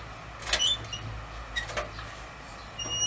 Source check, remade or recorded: recorded